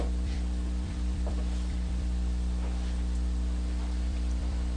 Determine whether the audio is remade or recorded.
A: remade